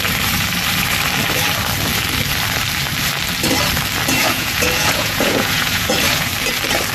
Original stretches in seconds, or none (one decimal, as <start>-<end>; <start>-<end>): 0.0-4.2; 6.3-6.9